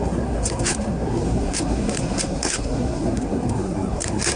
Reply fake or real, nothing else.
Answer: fake